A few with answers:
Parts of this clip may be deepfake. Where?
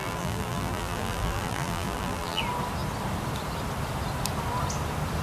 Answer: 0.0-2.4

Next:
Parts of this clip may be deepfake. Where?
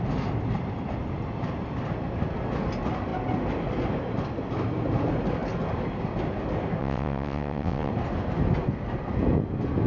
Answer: 6.8-7.9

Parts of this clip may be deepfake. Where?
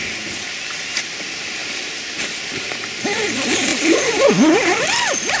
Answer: 1.6-2.7; 3.7-4.3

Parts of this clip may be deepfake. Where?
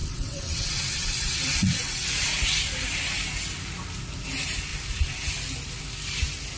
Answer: 0.0-2.1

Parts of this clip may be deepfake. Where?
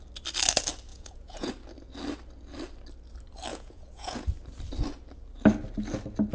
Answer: 0.9-1.5; 3.5-4.3